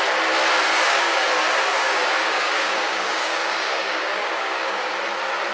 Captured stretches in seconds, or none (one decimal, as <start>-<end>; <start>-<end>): 0.0-0.7; 1.3-1.8; 4.9-5.5